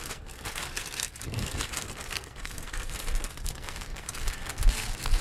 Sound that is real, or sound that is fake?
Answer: fake